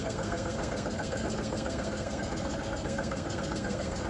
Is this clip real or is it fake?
fake